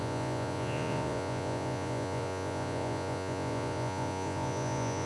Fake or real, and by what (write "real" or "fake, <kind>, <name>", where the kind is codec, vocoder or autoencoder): fake, vocoder, Vocos